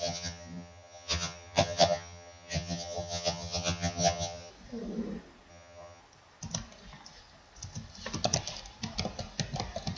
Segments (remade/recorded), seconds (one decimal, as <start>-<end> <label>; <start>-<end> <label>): 0.0-4.5 remade; 4.5-5.5 recorded; 5.5-6.0 remade; 6.0-10.0 recorded